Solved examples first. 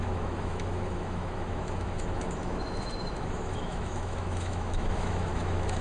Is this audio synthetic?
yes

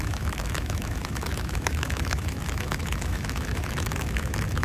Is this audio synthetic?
yes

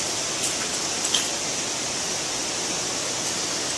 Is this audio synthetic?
no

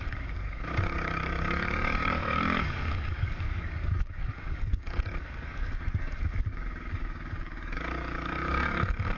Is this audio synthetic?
yes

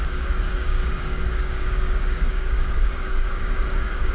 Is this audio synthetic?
yes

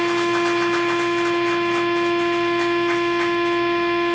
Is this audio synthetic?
no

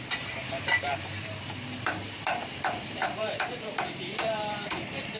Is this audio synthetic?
yes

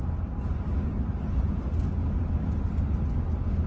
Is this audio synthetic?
no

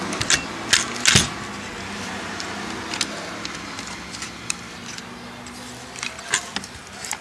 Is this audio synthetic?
no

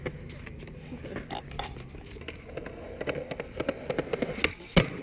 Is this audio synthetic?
no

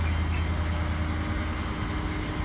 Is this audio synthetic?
no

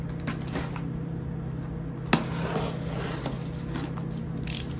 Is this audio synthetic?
no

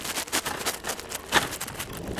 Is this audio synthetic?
no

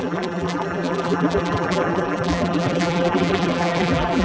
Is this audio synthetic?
yes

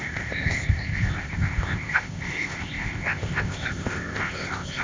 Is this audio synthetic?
yes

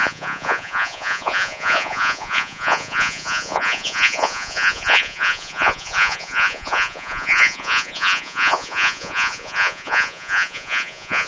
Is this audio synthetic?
yes